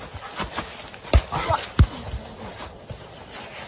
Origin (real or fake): real